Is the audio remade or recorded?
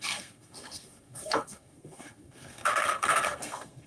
remade